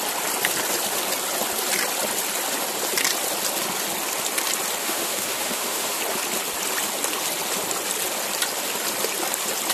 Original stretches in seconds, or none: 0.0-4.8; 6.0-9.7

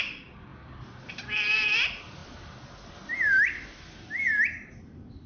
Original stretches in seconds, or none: 2.2-4.7

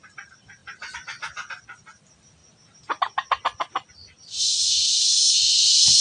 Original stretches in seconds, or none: 0.0-6.0

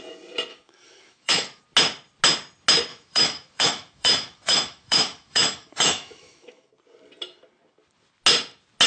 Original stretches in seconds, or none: 0.0-0.5; 1.6-2.9; 6.7-8.9

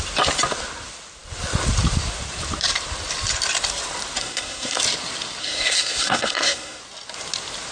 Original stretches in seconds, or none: 0.0-4.2; 4.8-5.4; 6.8-7.7

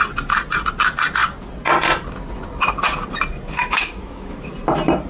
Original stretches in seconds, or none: 0.0-3.6; 4.5-5.1

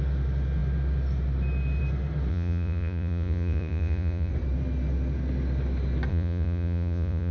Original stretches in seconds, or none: 0.0-2.3; 4.3-6.1